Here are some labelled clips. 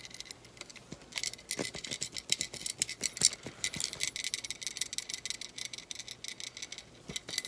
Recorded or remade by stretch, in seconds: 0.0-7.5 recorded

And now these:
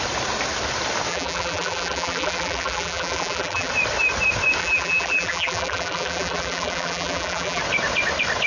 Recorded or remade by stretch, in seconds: 0.0-1.1 recorded; 1.1-3.7 remade; 3.7-4.6 recorded; 4.6-7.6 remade; 7.6-8.5 recorded

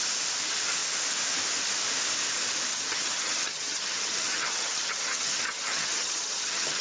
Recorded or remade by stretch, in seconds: 0.0-2.7 recorded; 2.7-6.8 remade

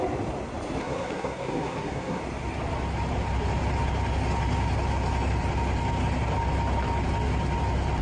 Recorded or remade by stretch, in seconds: 0.0-0.8 recorded; 0.8-2.2 remade; 2.2-8.0 recorded

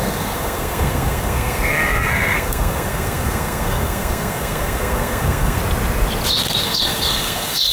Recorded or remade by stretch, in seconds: 0.0-5.6 remade; 5.6-6.6 recorded; 6.6-7.7 remade

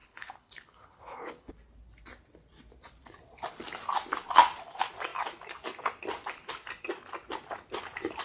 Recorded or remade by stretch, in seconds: 0.0-1.5 remade; 1.5-8.2 recorded

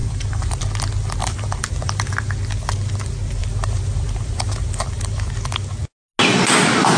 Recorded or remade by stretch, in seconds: 0.0-0.6 remade; 0.6-1.2 recorded; 1.2-2.0 remade; 2.0-3.4 recorded; 3.4-5.3 remade; 5.3-7.0 recorded